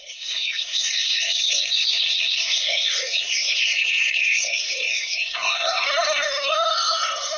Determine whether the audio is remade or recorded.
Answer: remade